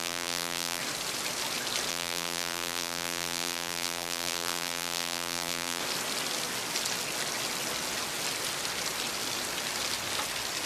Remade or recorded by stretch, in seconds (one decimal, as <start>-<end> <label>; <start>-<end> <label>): 0.0-0.8 remade; 0.8-1.9 recorded; 1.9-5.8 remade; 5.8-10.7 recorded